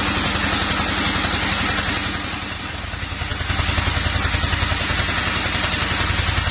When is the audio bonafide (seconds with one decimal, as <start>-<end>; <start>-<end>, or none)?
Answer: 0.0-6.5